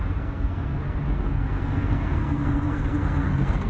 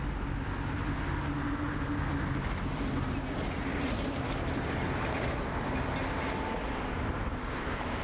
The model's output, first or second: first